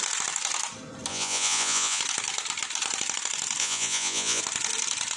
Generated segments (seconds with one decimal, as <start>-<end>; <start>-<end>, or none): 1.1-2.0; 3.6-4.4